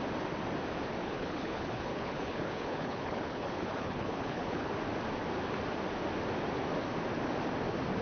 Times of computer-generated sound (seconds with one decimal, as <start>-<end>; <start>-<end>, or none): 1.0-4.7